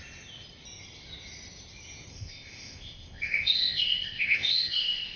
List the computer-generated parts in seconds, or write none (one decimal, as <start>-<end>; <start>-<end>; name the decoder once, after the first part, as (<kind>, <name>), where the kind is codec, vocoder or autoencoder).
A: 2.1-5.2 (codec, ZipCodec)